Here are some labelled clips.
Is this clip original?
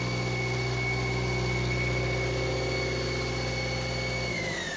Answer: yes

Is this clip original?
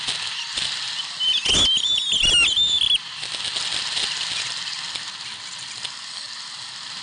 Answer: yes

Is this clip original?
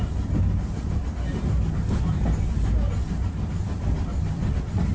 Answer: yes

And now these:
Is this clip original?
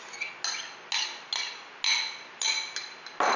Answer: yes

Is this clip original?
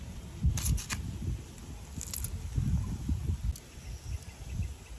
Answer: yes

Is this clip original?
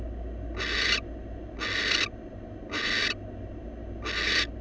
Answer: yes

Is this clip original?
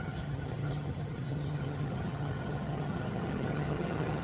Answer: no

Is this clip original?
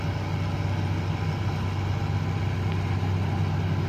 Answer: yes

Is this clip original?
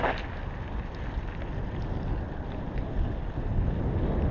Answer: yes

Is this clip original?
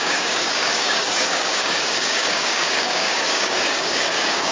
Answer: no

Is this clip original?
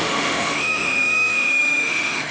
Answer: no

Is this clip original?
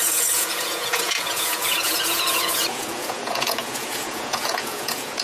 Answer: no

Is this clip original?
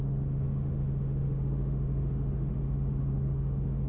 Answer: no